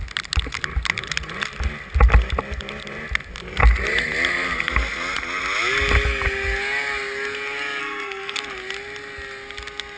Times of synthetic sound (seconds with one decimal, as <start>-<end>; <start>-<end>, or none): 7.8-8.4